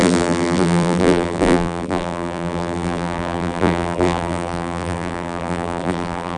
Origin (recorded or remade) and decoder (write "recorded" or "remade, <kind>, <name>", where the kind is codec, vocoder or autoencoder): remade, vocoder, BigVGAN v2